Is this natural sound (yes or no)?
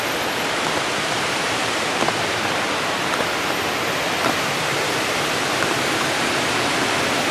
yes